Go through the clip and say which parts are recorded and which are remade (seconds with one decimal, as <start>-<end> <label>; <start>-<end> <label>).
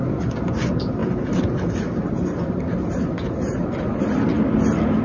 0.0-1.0 recorded; 1.0-4.0 remade; 4.0-5.0 recorded